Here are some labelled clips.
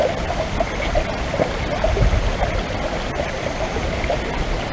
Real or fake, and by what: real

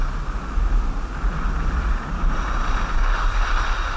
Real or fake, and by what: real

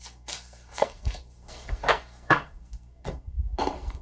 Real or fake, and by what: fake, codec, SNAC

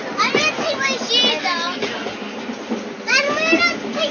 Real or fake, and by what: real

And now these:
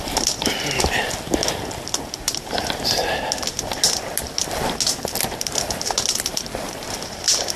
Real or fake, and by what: real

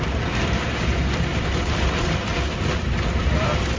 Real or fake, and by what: real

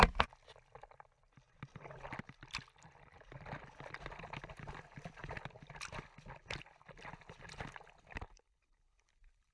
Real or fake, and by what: real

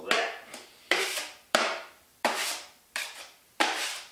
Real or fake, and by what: fake, vocoder, BigVGAN v2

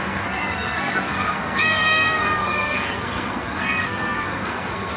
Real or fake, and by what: fake, codec, SNAC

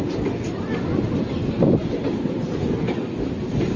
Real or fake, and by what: real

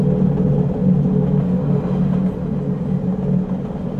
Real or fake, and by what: real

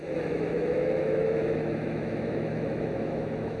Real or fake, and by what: fake, autoencoder, DAC-VAE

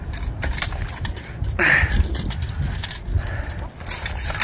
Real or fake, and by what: real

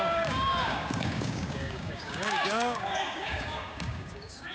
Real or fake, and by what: fake, codec, DAC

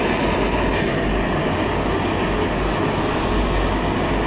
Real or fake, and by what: real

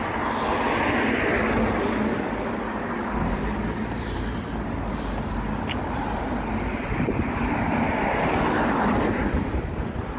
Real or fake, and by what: real